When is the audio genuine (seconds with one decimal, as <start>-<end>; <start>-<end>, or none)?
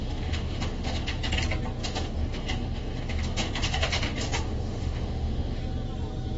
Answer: 1.2-1.8; 5.6-6.4